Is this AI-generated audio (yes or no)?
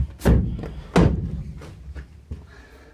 no